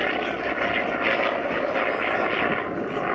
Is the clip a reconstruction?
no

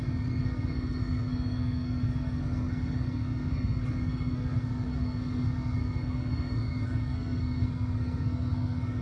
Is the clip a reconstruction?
yes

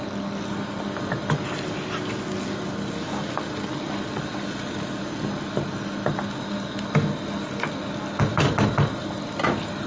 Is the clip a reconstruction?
no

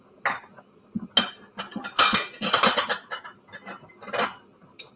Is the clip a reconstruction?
no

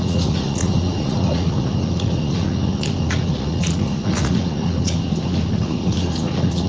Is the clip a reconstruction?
yes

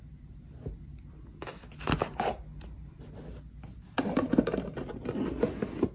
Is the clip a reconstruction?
no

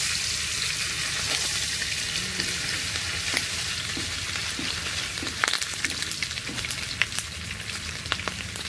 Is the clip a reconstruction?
no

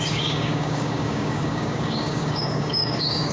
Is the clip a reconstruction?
yes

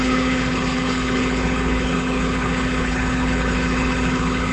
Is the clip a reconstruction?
yes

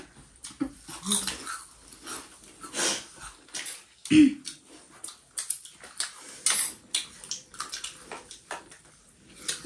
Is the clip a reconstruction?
no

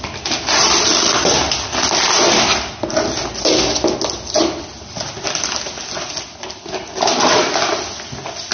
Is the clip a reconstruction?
no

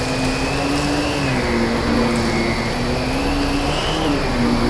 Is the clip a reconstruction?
no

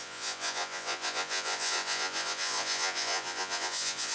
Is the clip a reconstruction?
yes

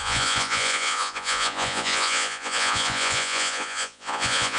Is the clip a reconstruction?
yes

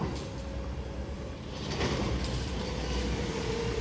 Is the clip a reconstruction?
no